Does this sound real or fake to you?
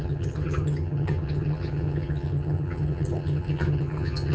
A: fake